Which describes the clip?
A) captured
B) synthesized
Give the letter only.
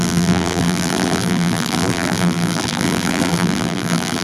B